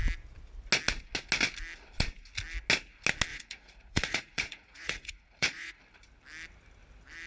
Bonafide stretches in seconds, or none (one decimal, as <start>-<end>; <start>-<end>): 0.0-3.3; 5.8-7.3